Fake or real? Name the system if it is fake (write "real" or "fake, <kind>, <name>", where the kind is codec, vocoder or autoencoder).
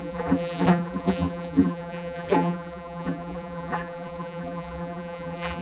fake, vocoder, BigVGAN v2